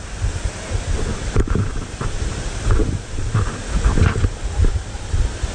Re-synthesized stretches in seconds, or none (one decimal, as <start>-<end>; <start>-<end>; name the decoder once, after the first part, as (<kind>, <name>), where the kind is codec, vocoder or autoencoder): 1.1-1.9 (vocoder, BigVGAN v2); 2.8-3.5